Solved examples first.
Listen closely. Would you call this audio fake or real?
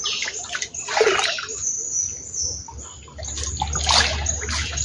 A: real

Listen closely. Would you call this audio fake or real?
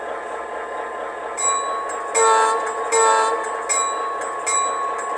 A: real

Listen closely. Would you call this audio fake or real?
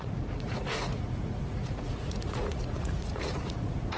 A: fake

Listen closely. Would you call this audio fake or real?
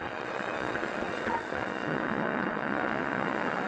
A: fake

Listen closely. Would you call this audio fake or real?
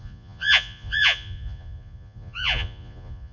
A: fake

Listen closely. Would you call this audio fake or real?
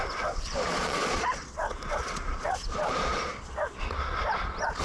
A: fake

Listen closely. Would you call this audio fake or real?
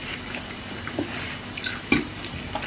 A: real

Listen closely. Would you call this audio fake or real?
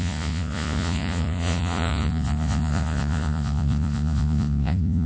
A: fake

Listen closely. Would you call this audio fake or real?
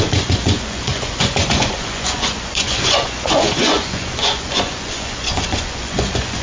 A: fake